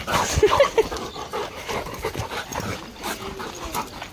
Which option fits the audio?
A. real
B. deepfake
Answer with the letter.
A